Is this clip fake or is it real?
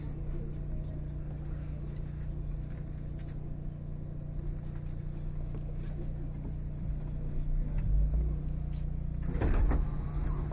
real